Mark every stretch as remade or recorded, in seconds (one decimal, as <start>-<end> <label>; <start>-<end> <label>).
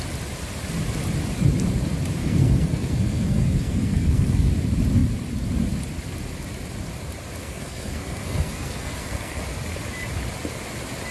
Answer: 0.0-2.2 recorded; 2.2-4.5 remade; 4.5-7.4 recorded; 7.4-9.4 remade; 9.4-11.1 recorded